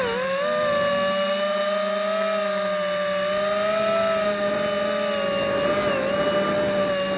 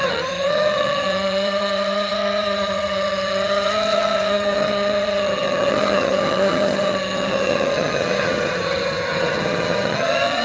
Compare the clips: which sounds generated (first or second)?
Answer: second